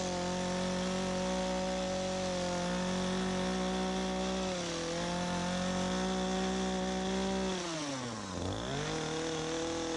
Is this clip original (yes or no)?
yes